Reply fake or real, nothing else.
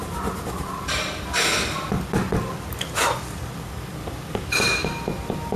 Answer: real